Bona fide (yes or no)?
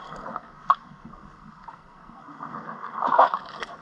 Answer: no